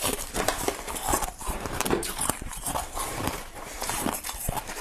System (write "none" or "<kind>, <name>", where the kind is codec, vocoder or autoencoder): vocoder, BigVGAN v2